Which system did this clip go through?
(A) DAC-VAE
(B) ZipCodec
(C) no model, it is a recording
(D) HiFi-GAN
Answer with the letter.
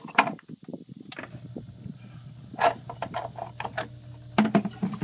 C